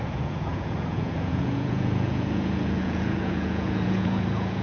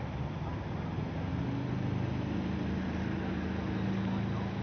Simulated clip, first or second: first